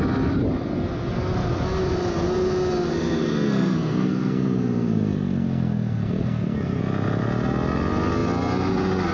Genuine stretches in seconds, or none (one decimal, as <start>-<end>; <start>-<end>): 0.0-2.9; 6.8-9.1